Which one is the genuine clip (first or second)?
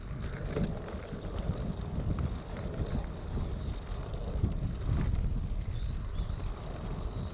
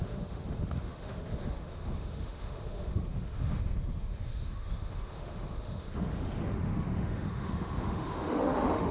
first